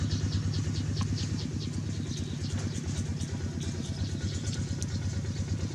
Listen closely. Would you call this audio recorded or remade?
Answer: recorded